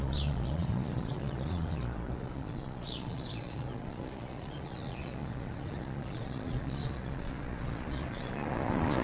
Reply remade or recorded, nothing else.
remade